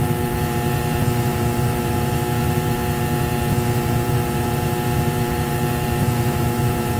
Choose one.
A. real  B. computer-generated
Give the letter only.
B